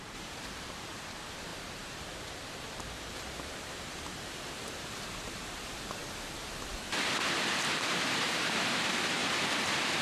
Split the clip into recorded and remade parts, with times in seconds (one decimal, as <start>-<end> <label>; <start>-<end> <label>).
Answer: 0.0-6.0 remade; 6.0-7.5 recorded; 7.5-9.2 remade; 9.2-10.0 recorded